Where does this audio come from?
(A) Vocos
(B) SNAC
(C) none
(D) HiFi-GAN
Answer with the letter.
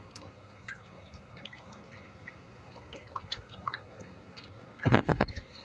B